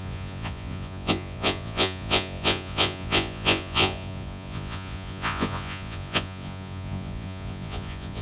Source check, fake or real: fake